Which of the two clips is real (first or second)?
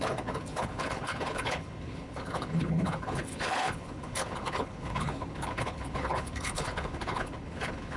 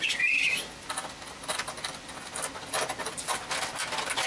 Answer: second